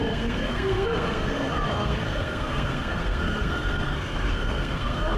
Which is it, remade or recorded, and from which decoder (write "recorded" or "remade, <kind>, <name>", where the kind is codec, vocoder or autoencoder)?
remade, codec, SNAC